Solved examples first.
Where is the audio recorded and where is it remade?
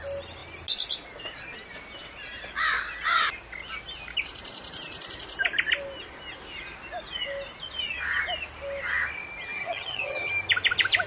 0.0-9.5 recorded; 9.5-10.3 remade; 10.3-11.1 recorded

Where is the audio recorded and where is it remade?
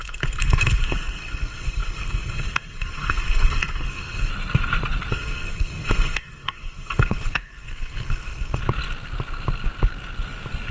0.0-4.3 remade; 4.3-5.1 recorded; 5.1-8.6 remade; 8.6-10.7 recorded